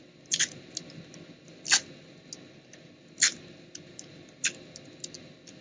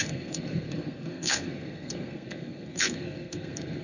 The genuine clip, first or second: first